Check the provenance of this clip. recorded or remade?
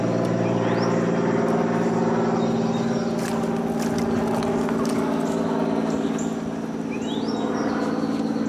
recorded